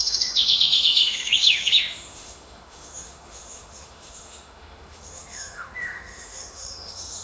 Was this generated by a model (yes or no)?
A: yes